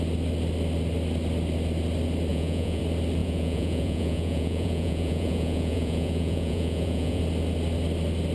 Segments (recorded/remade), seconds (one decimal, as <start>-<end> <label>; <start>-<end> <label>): 0.0-2.3 recorded; 2.3-2.8 remade; 2.8-3.2 recorded; 3.2-7.2 remade; 7.2-8.3 recorded